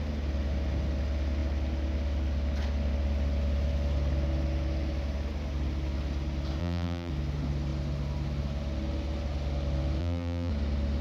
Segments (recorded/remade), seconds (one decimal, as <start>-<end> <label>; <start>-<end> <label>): 0.0-6.6 recorded; 6.6-7.1 remade; 7.1-10.0 recorded; 10.0-10.5 remade; 10.5-11.0 recorded